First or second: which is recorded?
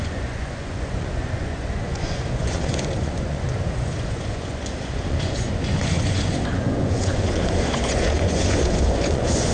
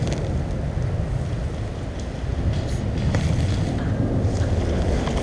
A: second